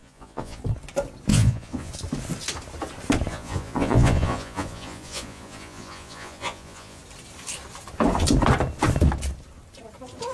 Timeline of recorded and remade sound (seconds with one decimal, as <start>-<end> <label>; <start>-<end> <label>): 0.0-0.6 remade; 0.6-1.3 recorded; 1.3-1.9 remade; 1.9-3.3 recorded; 3.3-7.0 remade; 7.0-10.3 recorded